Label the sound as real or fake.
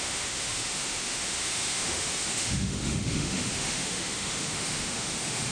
fake